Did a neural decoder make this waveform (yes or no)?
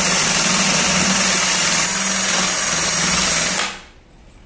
no